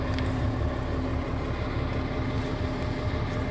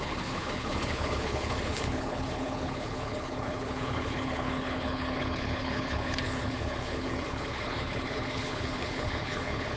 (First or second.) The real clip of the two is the first